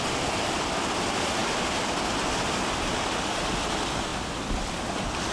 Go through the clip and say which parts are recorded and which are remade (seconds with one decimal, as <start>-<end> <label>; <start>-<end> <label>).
0.0-5.3 recorded

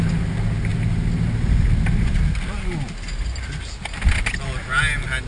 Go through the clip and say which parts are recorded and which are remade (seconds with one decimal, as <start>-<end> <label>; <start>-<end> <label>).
0.0-5.3 recorded

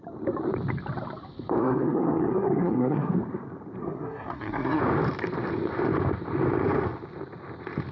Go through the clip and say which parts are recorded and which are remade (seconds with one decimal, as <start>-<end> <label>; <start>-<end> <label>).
0.0-1.6 recorded; 1.6-3.1 remade; 3.1-3.8 recorded; 3.8-4.8 remade; 4.8-7.9 recorded

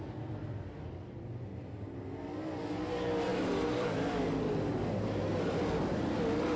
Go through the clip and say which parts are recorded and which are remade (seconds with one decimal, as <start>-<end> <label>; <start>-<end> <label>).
0.0-3.3 recorded; 3.3-3.9 remade; 3.9-6.6 recorded

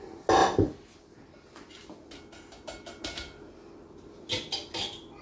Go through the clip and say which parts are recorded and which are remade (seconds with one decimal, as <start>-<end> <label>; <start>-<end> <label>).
0.0-5.2 recorded

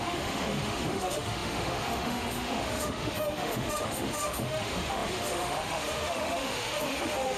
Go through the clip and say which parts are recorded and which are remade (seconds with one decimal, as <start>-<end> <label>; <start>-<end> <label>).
0.0-7.4 remade

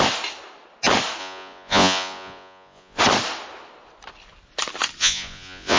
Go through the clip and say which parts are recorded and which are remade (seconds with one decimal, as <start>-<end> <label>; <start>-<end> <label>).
0.0-1.2 recorded; 1.2-3.0 remade; 3.0-5.0 recorded; 5.0-5.8 remade